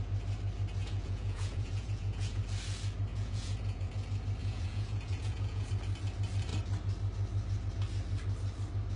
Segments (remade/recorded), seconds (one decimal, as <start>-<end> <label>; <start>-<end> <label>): 0.0-0.8 recorded; 0.8-2.4 remade; 2.4-3.1 recorded; 3.1-3.9 remade; 3.9-4.4 recorded; 4.4-5.7 remade; 5.7-9.0 recorded